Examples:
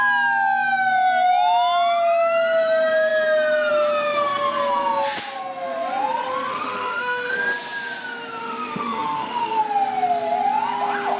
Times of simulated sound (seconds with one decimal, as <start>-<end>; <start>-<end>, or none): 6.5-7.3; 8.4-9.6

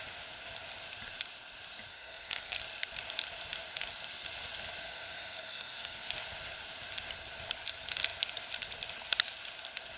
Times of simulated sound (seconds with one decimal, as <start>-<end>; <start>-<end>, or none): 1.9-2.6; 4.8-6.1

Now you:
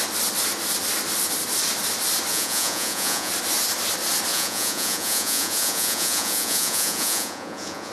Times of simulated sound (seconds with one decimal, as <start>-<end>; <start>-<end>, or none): 2.3-3.3; 4.3-7.9

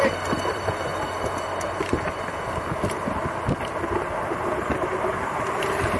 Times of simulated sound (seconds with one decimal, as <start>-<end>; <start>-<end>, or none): 0.0-0.9; 4.0-6.0

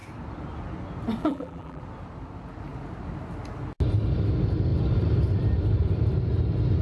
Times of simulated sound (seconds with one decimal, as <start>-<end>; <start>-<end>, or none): 1.2-1.8